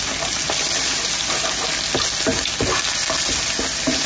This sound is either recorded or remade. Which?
recorded